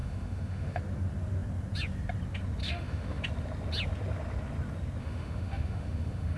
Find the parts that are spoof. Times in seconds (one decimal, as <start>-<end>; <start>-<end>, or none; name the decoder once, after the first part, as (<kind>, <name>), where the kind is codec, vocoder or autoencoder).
0.0-0.8 (autoencoder, DAC-VAE); 2.6-3.2; 5.0-6.4